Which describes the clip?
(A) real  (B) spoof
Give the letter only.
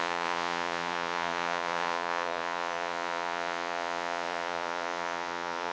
B